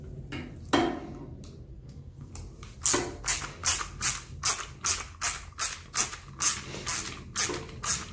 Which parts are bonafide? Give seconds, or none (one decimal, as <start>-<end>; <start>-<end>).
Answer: 0.0-1.7; 2.3-8.1